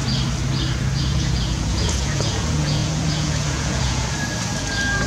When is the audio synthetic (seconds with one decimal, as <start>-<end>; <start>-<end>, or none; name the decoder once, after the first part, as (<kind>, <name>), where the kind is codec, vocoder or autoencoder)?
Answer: 1.0-4.0 (vocoder, Vocos); 4.6-5.1